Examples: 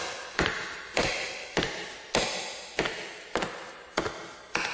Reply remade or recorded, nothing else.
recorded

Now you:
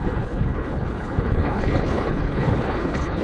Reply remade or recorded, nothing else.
remade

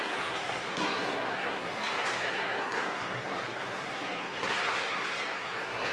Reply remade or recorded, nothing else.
remade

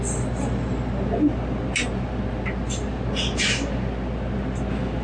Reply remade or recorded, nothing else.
recorded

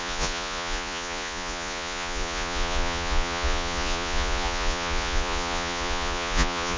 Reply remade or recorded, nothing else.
remade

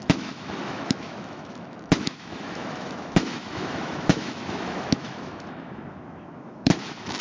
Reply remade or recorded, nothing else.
remade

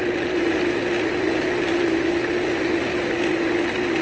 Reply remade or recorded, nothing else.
recorded